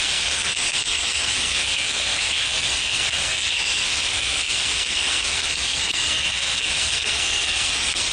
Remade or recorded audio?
remade